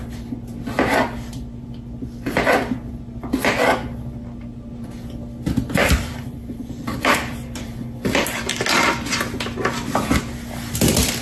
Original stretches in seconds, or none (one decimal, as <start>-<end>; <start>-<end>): 0.0-5.8; 8.4-11.2